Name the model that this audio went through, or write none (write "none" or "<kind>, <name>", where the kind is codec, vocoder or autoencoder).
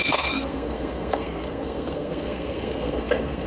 codec, SNAC